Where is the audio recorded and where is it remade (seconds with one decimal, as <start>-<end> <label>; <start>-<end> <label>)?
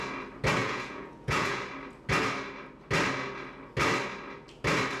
0.0-0.6 recorded; 0.6-1.6 remade; 1.6-5.0 recorded